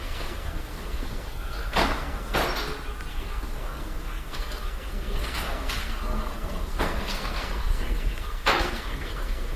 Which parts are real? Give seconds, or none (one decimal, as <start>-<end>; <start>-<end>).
2.4-3.1